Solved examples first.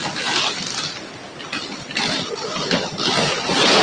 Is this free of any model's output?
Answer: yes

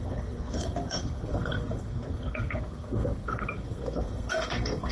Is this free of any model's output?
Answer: no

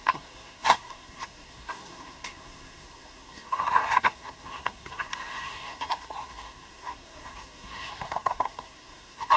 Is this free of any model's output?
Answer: no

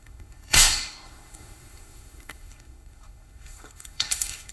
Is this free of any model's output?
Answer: no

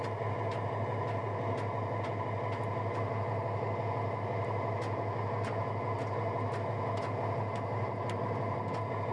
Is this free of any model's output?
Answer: yes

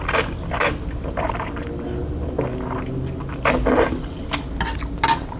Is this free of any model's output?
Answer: yes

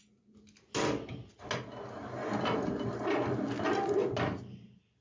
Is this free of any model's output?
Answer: yes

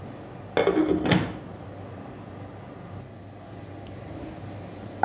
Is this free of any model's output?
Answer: yes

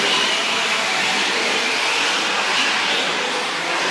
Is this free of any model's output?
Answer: yes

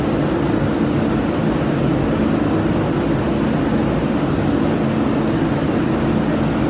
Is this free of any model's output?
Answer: yes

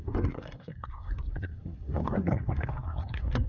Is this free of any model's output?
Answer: no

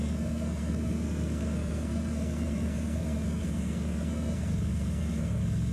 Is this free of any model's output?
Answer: no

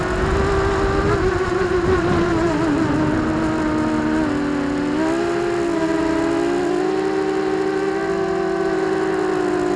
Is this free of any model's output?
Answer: yes